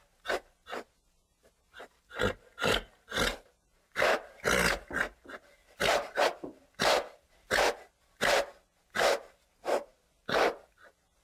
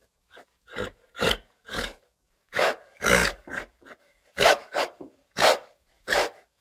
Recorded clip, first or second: first